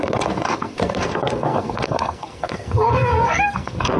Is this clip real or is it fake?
fake